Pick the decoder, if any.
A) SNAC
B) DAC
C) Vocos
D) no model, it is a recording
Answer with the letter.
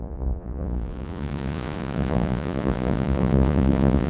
C